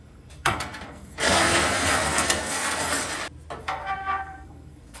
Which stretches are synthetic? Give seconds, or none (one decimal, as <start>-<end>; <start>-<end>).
0.0-3.0; 3.6-5.0